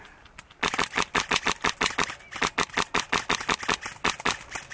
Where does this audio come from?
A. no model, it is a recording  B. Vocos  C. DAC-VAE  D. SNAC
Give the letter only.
A